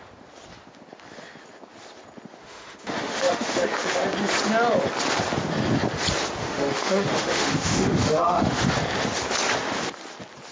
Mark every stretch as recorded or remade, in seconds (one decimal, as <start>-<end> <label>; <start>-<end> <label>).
0.0-2.4 recorded; 2.4-4.0 remade; 4.0-6.4 recorded; 6.4-8.6 remade; 8.6-10.5 recorded